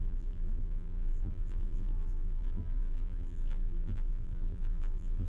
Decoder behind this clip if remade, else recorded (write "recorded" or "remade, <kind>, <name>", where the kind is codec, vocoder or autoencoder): remade, vocoder, BigVGAN v2